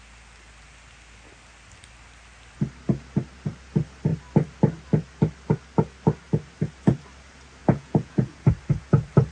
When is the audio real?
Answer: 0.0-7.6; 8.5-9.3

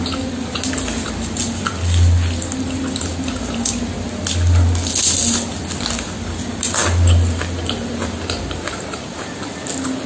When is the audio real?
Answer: 0.0-10.1

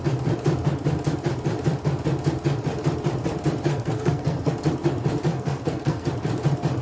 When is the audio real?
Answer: 0.0-3.7; 4.5-5.3; 6.1-6.8

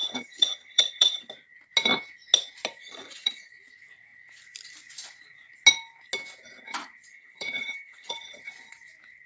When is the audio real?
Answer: 1.3-2.8; 3.5-7.1; 8.4-9.3

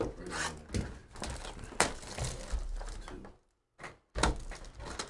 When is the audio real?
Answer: 0.0-5.1

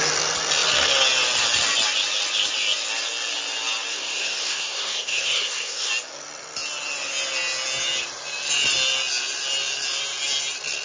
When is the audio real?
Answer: 0.0-3.9; 5.9-10.8

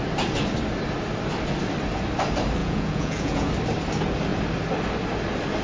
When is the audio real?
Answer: 0.0-2.6; 3.5-5.6